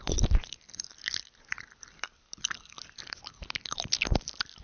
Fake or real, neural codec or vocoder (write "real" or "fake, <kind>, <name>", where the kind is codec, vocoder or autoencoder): real